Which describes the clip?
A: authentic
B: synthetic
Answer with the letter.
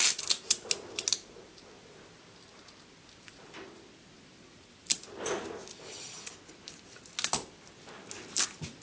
A